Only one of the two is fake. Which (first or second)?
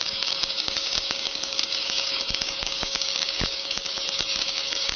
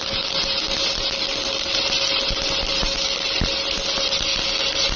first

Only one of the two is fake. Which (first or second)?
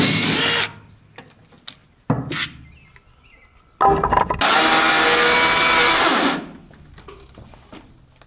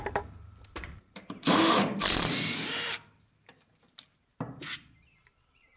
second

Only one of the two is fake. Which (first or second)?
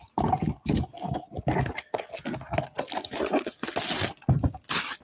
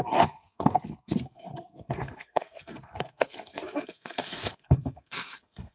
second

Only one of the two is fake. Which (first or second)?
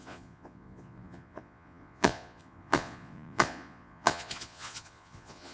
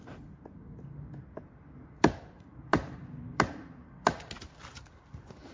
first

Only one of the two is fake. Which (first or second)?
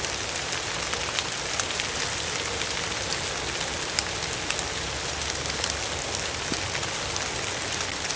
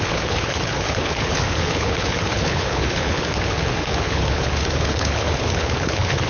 second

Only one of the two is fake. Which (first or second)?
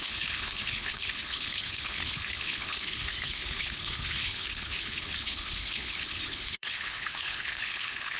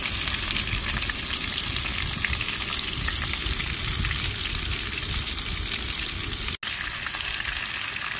first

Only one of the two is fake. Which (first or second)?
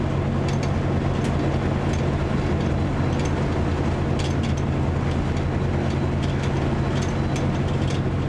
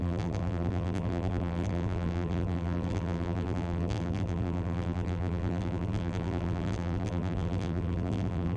second